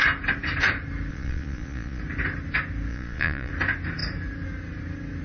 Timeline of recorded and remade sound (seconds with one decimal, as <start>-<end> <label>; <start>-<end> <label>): 0.0-1.1 recorded; 1.1-2.0 remade; 2.0-2.9 recorded; 2.9-3.5 remade; 3.5-5.2 recorded